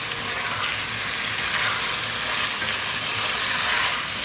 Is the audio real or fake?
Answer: real